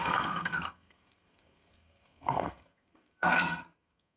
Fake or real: fake